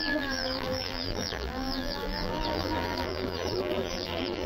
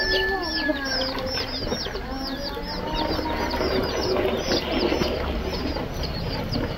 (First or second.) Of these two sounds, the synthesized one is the first